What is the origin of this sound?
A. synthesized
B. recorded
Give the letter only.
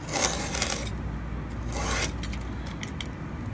B